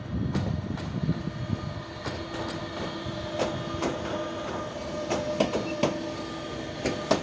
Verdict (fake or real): real